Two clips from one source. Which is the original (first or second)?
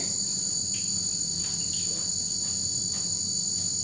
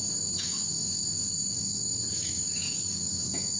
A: first